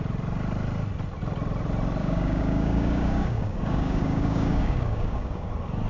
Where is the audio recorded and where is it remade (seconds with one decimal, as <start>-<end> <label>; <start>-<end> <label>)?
0.0-2.0 recorded; 2.0-5.5 remade; 5.5-5.9 recorded